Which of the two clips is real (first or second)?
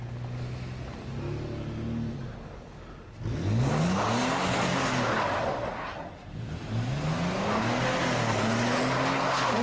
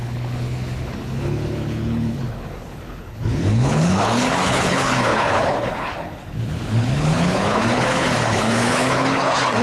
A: first